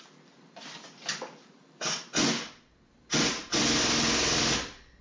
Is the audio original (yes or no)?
yes